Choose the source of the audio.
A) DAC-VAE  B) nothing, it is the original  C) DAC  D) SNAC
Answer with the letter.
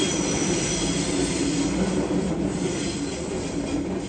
B